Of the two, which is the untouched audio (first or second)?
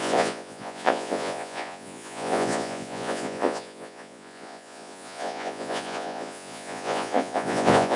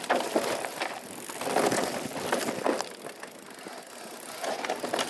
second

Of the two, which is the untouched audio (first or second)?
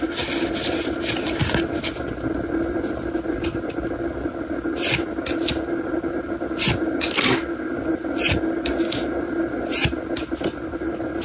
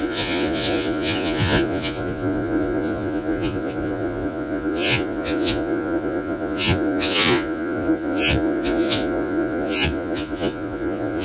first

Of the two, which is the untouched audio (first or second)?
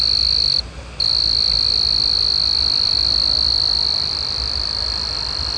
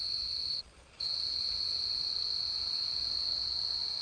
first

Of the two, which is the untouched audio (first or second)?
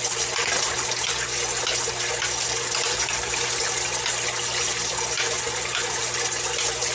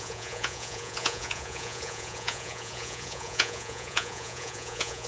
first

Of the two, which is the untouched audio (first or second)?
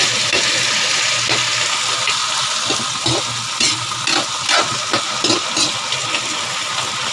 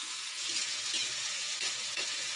first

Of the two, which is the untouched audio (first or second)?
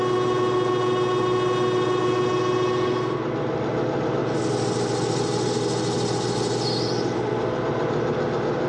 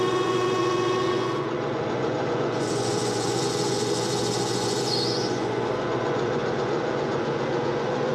first